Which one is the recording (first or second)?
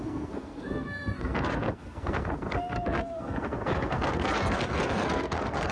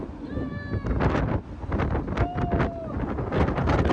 second